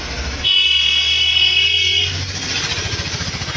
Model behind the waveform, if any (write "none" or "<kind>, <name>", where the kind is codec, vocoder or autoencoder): none